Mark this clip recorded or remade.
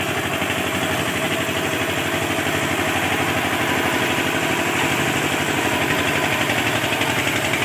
recorded